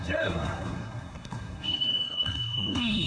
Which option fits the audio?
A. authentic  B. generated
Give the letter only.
B